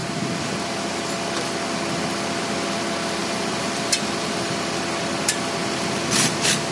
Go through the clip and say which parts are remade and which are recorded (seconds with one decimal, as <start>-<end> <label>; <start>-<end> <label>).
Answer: 0.0-1.1 remade; 1.1-3.2 recorded; 3.2-4.8 remade; 4.8-5.6 recorded; 5.6-6.7 remade